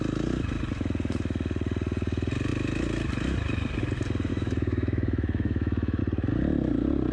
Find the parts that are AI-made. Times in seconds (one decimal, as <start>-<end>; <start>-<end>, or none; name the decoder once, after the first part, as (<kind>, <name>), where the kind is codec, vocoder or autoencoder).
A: 4.3-6.0 (autoencoder, DAC-VAE)

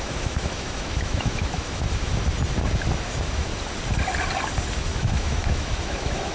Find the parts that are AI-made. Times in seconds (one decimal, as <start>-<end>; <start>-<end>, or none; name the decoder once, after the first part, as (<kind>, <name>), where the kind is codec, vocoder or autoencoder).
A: 0.0-2.1 (autoencoder, DAC-VAE); 3.0-3.5; 4.7-6.3

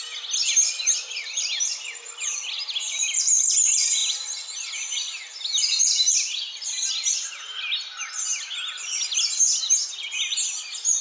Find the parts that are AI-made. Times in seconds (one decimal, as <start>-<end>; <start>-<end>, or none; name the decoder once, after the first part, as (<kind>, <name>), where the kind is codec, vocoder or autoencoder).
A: none

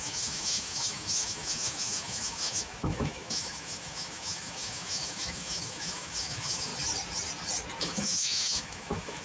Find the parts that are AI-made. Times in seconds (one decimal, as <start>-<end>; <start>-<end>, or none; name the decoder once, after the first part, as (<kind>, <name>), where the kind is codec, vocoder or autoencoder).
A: 0.0-6.7 (autoencoder, DAC-VAE); 7.8-9.2

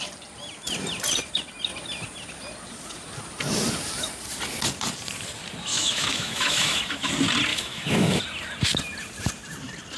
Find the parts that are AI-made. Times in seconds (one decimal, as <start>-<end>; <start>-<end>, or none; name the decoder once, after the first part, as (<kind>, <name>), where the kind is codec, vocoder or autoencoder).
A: 5.7-7.1 (autoencoder, DAC-VAE); 7.5-8.2

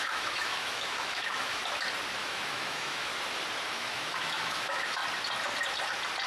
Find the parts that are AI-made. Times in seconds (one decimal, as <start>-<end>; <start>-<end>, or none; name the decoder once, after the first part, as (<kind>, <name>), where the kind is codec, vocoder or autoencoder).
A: 0.0-1.6 (autoencoder, DAC-VAE); 2.2-3.1; 3.7-5.0

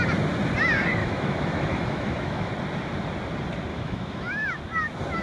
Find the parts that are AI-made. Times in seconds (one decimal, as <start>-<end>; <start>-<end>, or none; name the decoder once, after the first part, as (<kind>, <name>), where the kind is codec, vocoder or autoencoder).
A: 1.0-2.5 (autoencoder, DAC-VAE); 3.7-4.6